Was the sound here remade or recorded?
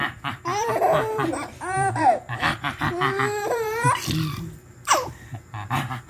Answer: remade